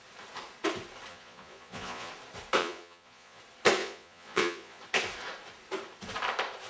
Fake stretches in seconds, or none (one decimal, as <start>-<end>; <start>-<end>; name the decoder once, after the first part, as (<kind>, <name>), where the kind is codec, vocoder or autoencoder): 1.1-2.1 (vocoder, Vocos); 2.6-3.4; 3.8-4.8